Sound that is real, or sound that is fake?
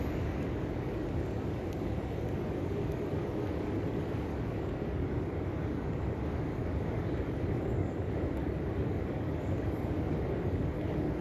fake